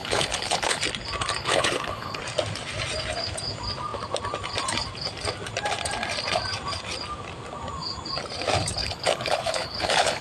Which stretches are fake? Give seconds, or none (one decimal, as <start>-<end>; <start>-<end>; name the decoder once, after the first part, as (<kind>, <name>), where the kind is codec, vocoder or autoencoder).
0.0-0.8 (codec, HILCodec); 1.4-2.2; 8.8-10.2